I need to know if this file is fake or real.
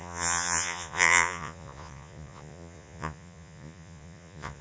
fake